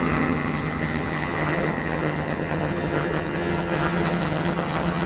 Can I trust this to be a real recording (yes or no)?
no